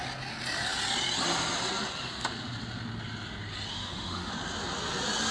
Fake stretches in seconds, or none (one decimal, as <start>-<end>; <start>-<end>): 3.7-4.3

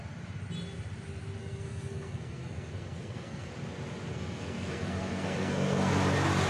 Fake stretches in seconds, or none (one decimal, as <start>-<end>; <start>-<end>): 1.4-3.5; 4.1-5.9

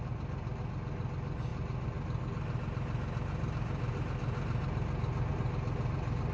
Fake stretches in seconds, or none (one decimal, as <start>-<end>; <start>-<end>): none

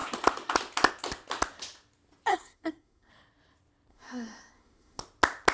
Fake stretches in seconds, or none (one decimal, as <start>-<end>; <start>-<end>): 2.3-3.1; 3.9-5.0